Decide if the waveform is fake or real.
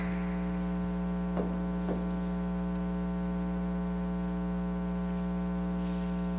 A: real